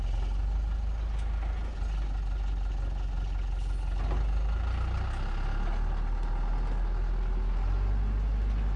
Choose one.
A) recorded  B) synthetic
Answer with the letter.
A